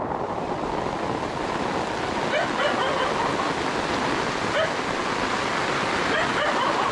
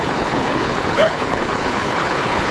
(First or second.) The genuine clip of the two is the first